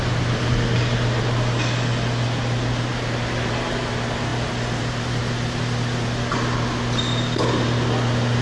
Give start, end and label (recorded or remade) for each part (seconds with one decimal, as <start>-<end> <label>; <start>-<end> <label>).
0.0-8.4 recorded